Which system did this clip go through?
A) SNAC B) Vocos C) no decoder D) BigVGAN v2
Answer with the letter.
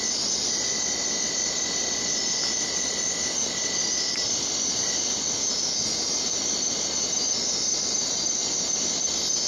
C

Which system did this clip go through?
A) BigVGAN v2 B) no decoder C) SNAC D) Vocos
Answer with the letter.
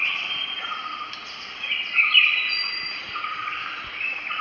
B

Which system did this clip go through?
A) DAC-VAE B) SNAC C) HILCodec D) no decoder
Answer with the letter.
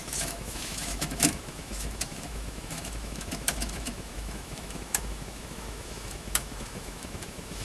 A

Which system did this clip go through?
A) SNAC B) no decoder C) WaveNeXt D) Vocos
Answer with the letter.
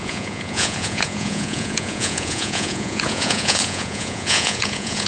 D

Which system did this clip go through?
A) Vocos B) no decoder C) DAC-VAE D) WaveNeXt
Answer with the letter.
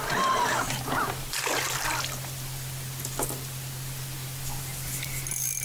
B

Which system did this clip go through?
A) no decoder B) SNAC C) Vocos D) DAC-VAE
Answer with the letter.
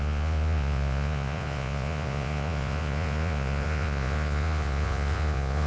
C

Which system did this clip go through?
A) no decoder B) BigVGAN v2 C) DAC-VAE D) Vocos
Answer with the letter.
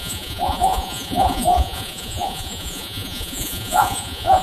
D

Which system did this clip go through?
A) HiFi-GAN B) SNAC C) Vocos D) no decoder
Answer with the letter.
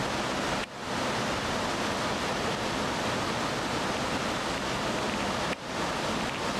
D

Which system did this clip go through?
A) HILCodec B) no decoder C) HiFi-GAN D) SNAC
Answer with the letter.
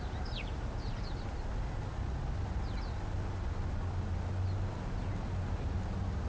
B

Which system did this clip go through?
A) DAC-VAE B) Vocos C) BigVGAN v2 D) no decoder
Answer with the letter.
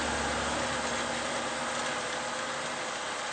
D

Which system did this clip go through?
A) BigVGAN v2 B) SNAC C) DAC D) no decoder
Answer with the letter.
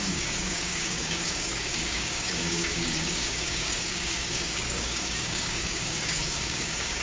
C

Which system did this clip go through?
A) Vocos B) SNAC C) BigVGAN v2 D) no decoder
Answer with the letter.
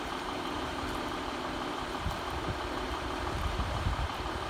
C